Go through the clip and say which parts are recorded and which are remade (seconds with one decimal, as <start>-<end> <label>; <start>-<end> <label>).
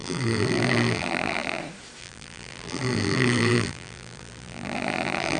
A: 0.0-1.6 remade; 1.6-2.0 recorded; 2.0-5.4 remade